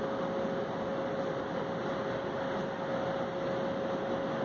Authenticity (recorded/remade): recorded